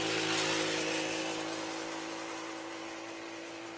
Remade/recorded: recorded